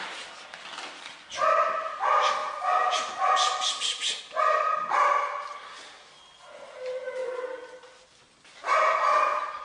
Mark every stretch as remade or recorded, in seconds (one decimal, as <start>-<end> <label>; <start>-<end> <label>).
0.0-7.2 remade; 7.2-9.6 recorded